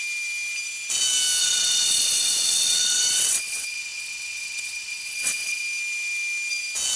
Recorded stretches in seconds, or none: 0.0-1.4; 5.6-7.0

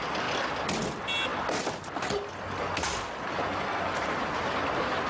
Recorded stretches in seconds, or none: 0.0-5.1